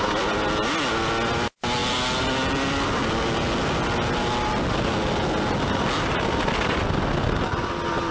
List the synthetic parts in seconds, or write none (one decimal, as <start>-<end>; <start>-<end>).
none